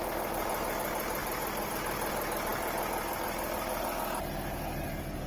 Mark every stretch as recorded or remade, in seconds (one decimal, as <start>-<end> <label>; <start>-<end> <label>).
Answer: 0.0-5.3 recorded